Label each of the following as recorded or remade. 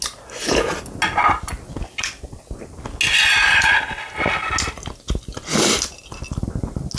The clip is recorded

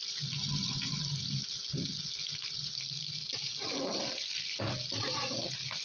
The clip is recorded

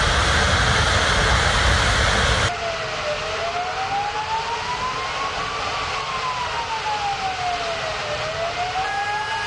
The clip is recorded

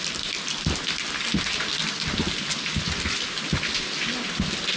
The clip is recorded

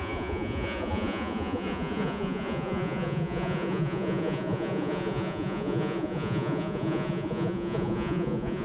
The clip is remade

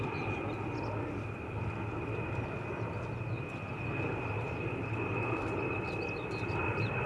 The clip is recorded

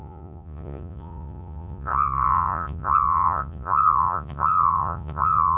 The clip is remade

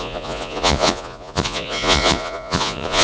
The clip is remade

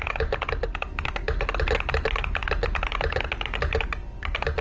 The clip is recorded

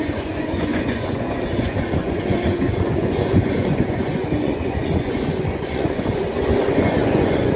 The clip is remade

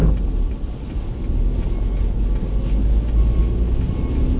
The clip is recorded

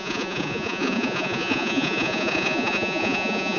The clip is remade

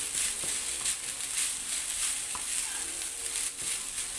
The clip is recorded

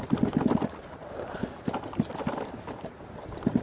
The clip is recorded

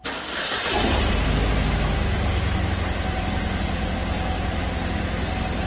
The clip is recorded